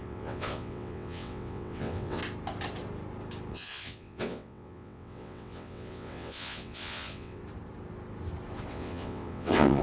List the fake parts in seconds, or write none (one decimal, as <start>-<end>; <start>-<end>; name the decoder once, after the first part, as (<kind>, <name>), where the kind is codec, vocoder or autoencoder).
0.0-2.2 (vocoder, WaveNeXt); 3.5-7.4; 8.7-9.8